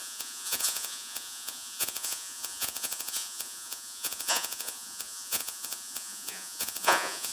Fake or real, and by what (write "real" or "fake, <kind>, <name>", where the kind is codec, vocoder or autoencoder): fake, vocoder, Vocos